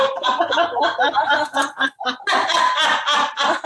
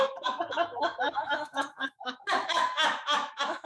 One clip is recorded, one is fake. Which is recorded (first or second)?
first